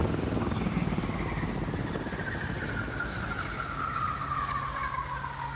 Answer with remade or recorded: recorded